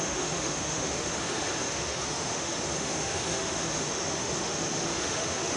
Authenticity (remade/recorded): remade